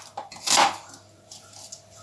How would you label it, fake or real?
real